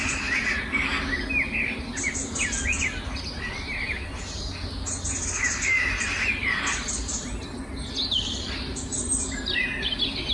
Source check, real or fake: real